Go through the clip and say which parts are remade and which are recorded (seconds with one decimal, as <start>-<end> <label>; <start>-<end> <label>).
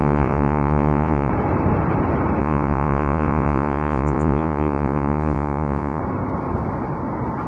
0.0-1.3 remade; 1.3-2.4 recorded; 2.4-6.0 remade; 6.0-7.5 recorded